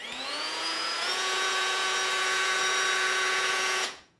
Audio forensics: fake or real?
fake